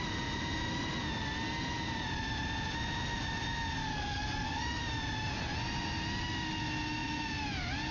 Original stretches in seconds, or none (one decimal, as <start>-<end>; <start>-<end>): 0.0-3.8; 4.8-7.9